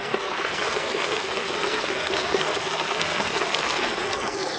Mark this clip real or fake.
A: fake